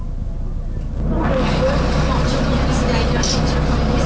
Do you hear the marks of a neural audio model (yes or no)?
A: no